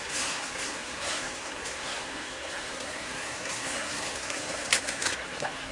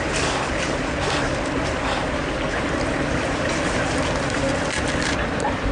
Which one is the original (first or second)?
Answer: second